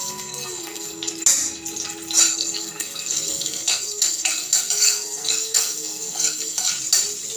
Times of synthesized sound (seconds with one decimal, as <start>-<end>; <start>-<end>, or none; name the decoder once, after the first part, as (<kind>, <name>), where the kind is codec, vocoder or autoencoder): 0.0-1.1 (codec, SNAC); 2.3-6.7